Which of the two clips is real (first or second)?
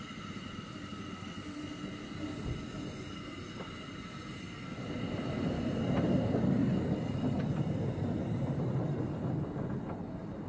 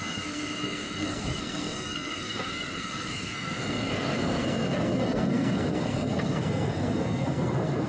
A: first